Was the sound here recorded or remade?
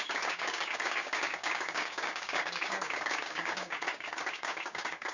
remade